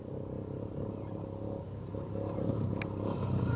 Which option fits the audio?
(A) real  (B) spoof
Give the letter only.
A